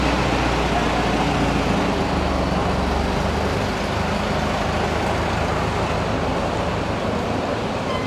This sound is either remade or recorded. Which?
recorded